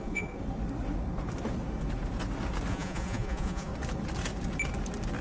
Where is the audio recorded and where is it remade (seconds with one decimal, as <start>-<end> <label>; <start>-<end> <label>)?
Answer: 0.0-0.4 remade; 0.4-2.7 recorded; 2.7-3.7 remade; 3.7-5.2 recorded